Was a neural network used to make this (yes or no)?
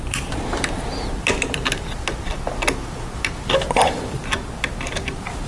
no